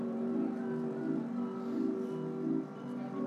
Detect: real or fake real